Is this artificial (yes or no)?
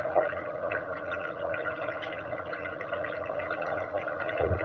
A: yes